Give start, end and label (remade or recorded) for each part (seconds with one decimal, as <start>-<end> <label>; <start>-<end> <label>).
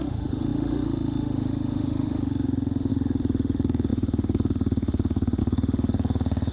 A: 0.0-6.5 remade